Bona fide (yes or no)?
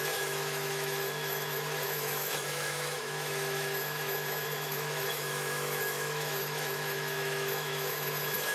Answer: no